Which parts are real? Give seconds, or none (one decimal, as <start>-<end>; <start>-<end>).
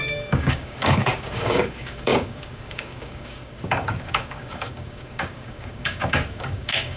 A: none